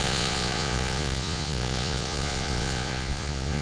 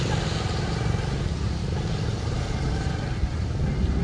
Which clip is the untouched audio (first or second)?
second